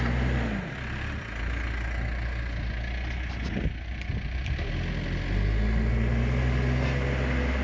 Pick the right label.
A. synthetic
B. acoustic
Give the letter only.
B